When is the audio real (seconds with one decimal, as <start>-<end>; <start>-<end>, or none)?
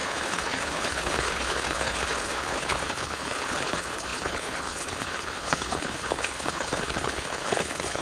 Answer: none